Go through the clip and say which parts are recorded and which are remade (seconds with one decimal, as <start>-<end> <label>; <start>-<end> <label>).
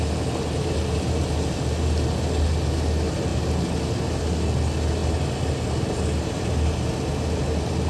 0.0-7.9 recorded